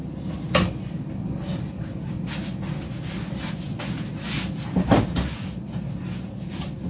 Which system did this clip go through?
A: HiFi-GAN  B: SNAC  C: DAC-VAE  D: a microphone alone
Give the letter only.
D